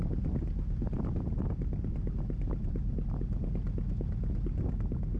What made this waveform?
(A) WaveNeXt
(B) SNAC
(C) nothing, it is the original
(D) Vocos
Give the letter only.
C